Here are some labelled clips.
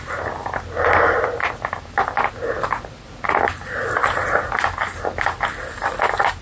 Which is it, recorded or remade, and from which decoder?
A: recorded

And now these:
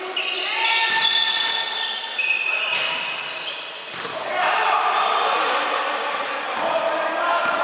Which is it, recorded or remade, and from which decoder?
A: recorded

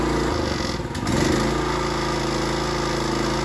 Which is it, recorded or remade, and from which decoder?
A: recorded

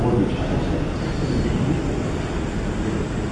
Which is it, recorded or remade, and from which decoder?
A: recorded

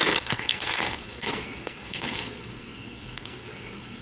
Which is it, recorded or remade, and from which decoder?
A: remade, codec, SNAC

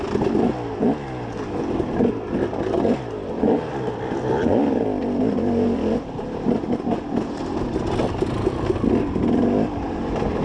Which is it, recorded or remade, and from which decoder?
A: recorded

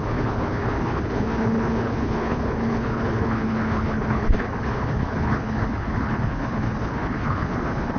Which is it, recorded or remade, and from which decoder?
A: remade, codec, HILCodec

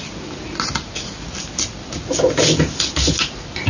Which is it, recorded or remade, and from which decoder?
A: recorded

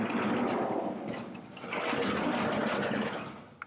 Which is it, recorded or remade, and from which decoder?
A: recorded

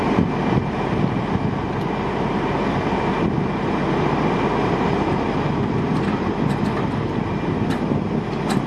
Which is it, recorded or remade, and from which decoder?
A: recorded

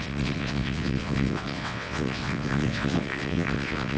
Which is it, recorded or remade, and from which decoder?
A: remade, vocoder, WaveNeXt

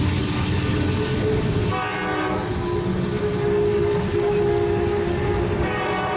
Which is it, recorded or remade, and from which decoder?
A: recorded